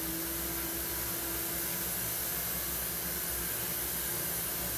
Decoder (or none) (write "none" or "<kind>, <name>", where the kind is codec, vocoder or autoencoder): none